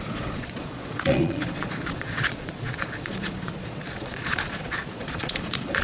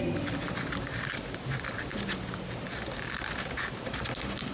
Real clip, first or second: second